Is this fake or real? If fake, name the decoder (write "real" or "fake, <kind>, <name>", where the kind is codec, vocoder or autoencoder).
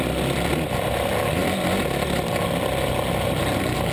real